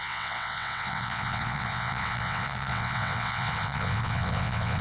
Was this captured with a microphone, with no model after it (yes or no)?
no